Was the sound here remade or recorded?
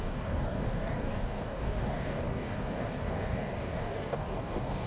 remade